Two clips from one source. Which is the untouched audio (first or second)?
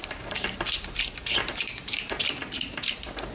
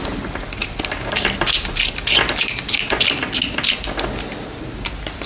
second